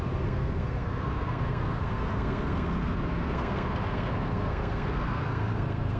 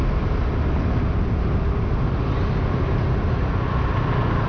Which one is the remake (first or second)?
first